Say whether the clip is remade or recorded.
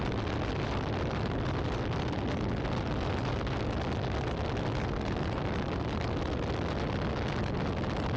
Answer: recorded